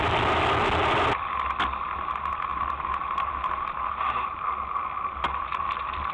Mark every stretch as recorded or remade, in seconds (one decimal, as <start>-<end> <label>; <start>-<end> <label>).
0.0-6.1 recorded